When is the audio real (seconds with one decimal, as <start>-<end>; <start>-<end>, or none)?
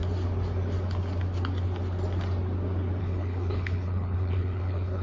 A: 0.0-3.0